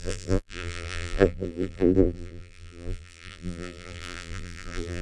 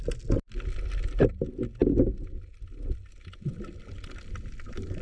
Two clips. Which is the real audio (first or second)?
second